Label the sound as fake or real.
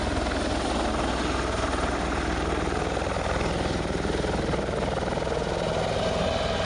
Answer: real